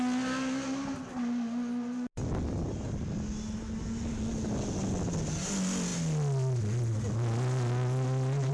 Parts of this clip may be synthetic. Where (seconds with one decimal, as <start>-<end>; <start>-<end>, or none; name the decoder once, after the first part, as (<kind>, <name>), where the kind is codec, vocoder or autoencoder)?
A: none